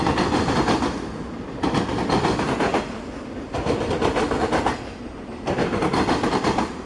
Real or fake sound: real